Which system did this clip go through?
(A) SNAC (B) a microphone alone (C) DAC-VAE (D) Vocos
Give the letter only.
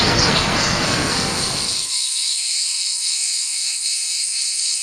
A